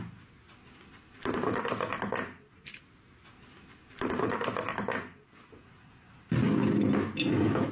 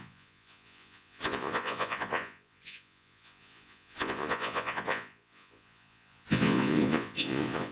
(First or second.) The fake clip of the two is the second